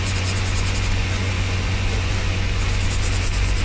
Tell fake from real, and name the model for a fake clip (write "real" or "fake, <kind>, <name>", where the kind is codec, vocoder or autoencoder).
fake, vocoder, Vocos